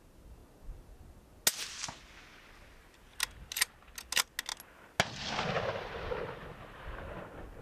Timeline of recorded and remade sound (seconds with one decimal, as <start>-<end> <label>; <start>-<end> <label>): 0.0-7.6 recorded